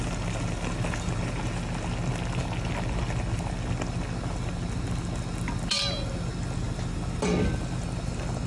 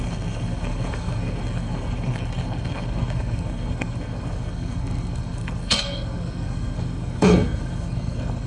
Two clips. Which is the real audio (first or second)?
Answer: first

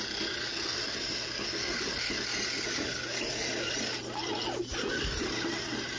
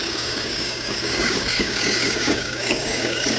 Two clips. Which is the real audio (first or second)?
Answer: first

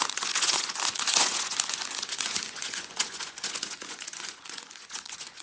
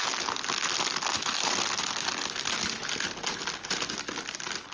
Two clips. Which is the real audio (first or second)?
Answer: second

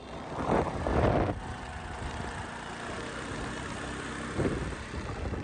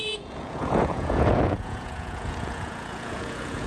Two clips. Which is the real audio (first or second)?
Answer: first